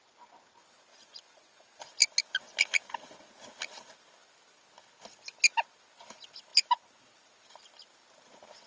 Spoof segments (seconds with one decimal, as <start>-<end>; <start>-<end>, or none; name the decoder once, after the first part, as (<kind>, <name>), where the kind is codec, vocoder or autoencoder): 0.9-1.9 (vocoder, Vocos)